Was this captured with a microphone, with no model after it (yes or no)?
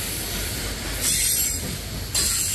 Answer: yes